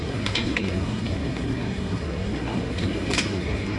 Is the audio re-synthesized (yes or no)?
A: yes